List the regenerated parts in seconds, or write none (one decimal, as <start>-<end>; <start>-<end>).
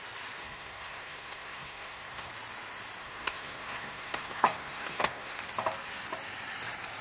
0.4-2.3; 3.0-5.4